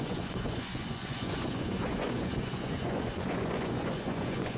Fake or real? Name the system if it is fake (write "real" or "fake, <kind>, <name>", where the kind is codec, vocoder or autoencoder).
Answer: fake, vocoder, Vocos